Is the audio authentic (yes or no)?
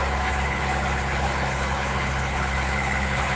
no